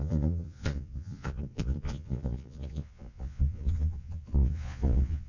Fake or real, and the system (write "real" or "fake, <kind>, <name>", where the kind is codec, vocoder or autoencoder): fake, vocoder, Vocos